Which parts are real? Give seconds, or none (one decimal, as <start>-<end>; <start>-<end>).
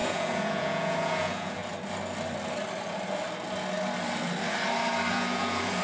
1.6-5.1